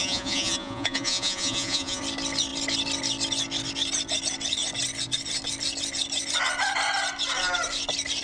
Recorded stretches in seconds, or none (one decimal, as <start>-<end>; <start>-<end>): 2.0-8.2